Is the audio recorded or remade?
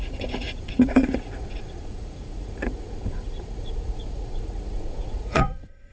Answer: remade